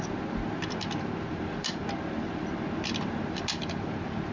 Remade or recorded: recorded